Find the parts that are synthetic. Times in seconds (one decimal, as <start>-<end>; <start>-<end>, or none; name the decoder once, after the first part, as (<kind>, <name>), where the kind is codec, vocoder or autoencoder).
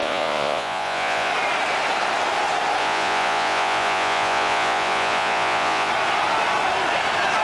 0.0-1.3 (vocoder, Vocos); 2.8-5.9